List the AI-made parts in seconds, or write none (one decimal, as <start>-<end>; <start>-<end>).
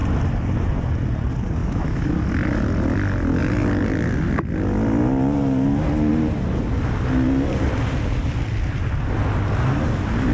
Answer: 1.6-2.1